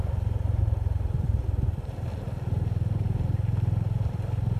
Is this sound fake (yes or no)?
no